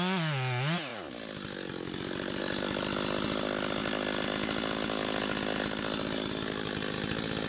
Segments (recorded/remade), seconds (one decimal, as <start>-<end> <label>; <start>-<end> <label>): 0.0-7.5 recorded